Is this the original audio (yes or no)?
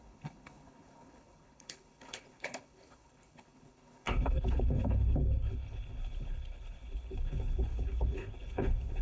no